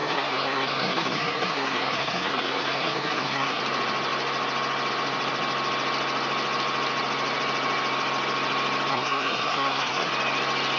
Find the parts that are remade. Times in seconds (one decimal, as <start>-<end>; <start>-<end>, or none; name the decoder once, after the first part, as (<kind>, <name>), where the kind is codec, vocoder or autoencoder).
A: 0.0-3.6 (codec, SNAC); 8.9-10.1